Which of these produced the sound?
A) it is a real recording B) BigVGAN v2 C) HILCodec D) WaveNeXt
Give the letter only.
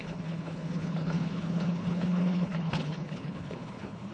C